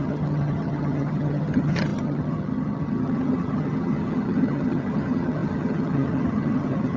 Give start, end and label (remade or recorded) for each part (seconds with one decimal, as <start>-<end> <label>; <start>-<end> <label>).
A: 0.0-7.0 remade